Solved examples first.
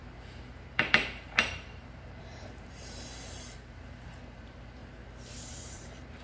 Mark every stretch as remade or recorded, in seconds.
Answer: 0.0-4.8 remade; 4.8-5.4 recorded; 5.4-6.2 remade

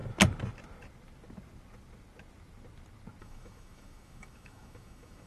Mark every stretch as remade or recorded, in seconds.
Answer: 0.0-3.2 recorded; 3.2-5.3 remade

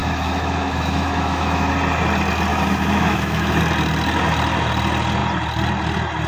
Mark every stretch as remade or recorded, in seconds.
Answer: 0.0-1.7 remade; 1.7-2.5 recorded; 2.5-3.6 remade; 3.6-6.3 recorded